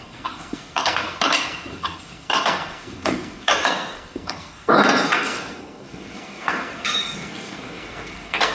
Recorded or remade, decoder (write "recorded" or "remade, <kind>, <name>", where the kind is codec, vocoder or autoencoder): remade, codec, SNAC